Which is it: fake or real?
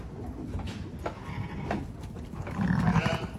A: real